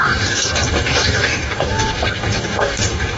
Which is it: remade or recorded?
remade